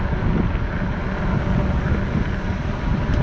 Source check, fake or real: real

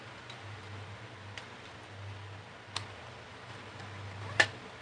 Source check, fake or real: real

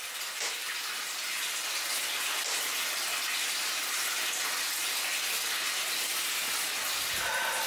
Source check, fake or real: real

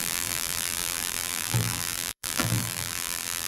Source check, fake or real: fake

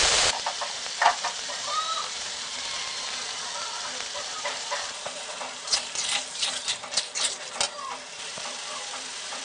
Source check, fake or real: fake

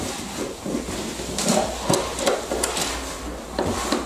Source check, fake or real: real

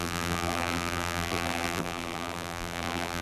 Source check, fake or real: fake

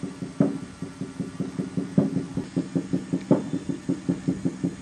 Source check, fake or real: real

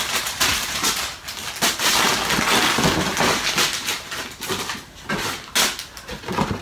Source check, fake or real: real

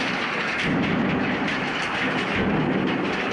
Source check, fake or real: fake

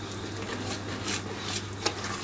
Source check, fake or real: real